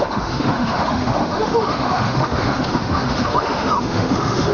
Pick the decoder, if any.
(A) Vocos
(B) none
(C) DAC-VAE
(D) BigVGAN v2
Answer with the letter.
C